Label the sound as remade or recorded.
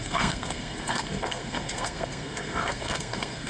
remade